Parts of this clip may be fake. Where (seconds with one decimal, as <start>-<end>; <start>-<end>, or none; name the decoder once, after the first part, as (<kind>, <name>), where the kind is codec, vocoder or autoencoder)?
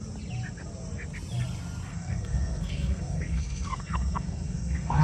1.9-5.0 (codec, SNAC)